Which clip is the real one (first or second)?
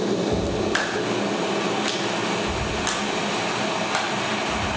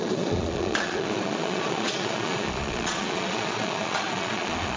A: first